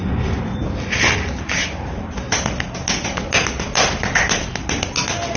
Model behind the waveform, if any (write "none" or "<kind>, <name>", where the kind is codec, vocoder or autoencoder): none